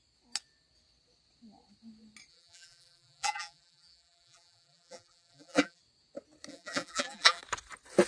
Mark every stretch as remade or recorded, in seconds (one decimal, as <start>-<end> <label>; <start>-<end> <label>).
0.0-2.3 recorded; 2.3-5.8 remade; 5.8-6.5 recorded; 6.5-7.4 remade; 7.4-8.1 recorded